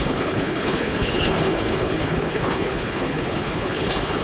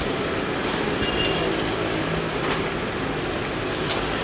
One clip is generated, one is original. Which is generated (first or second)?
first